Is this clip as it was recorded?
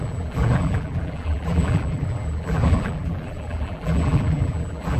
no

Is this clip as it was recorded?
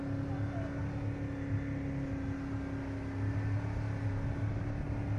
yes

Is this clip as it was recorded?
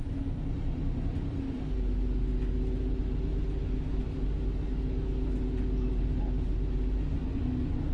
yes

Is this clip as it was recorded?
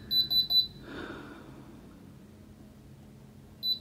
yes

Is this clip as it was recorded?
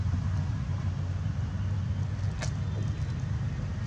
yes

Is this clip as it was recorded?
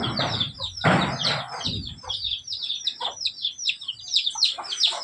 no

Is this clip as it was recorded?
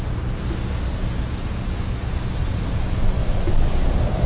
yes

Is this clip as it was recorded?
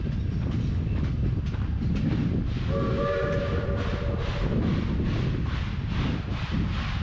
yes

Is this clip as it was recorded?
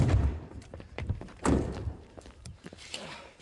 no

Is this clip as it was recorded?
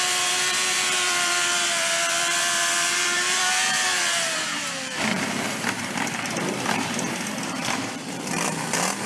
no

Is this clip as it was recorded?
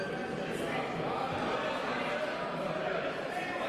yes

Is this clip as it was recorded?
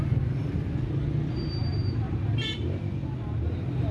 yes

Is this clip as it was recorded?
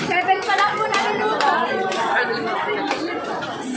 no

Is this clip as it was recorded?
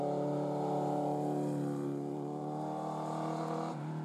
yes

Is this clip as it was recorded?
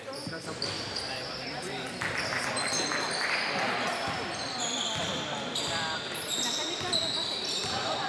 no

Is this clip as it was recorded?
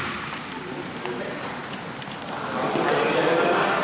yes